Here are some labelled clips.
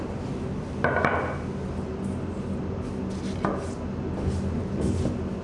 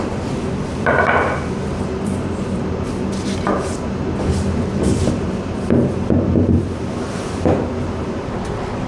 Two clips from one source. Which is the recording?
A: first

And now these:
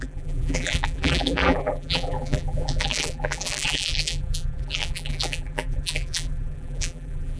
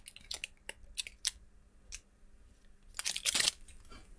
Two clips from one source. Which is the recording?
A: second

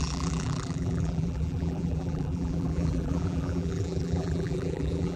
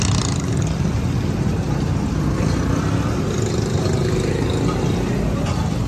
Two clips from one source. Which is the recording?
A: second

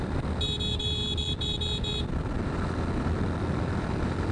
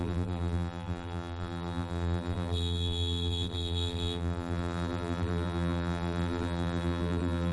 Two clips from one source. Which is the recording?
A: first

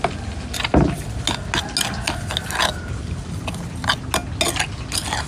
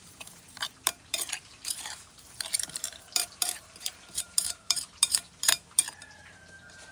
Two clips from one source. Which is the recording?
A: first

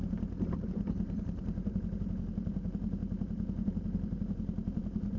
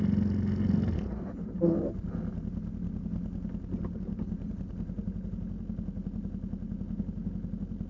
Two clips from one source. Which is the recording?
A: second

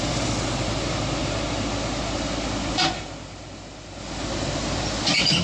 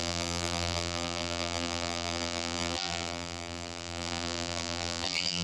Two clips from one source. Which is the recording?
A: first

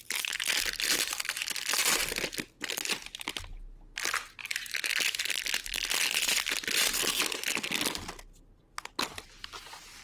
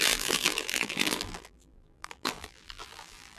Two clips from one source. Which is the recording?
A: first